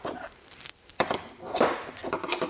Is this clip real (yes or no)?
yes